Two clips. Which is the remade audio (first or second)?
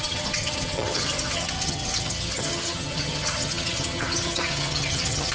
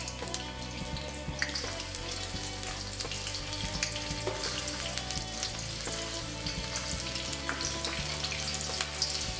first